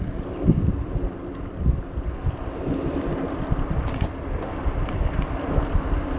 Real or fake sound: real